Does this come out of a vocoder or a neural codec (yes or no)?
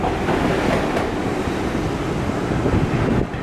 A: no